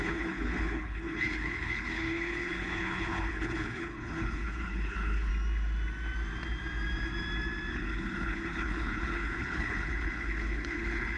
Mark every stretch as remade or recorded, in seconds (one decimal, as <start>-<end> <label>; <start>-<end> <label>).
0.0-5.3 remade; 5.3-7.7 recorded; 7.7-11.2 remade